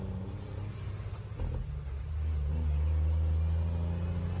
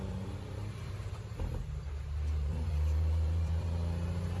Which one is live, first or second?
first